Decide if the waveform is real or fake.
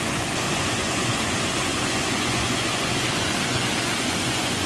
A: fake